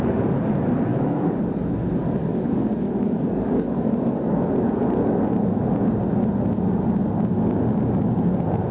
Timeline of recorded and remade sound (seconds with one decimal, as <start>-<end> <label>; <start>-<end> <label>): 0.0-0.9 recorded; 0.9-1.6 remade; 1.6-2.2 recorded; 2.2-4.4 remade; 4.4-8.7 recorded